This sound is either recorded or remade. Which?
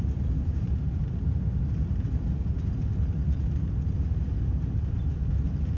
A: recorded